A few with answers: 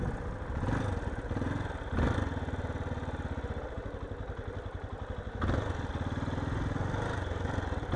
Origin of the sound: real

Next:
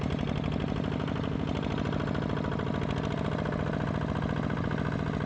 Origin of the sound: real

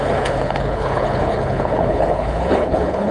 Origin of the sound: fake